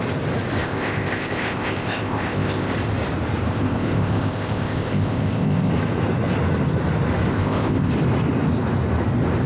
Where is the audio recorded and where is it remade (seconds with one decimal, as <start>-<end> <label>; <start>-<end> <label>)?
0.0-0.6 recorded; 0.6-2.7 remade; 2.7-3.5 recorded; 3.5-5.7 remade; 5.7-7.3 recorded; 7.3-7.9 remade; 7.9-9.5 recorded